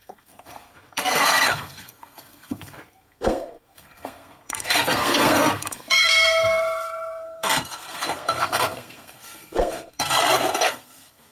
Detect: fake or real fake